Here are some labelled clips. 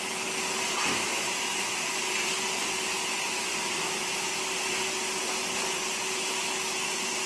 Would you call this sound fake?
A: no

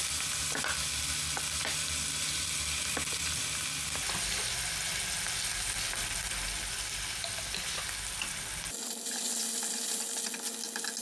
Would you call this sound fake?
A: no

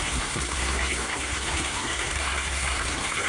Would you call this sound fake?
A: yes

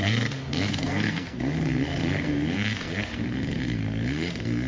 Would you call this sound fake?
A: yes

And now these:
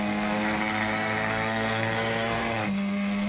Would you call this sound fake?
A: yes